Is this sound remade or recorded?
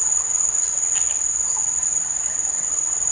recorded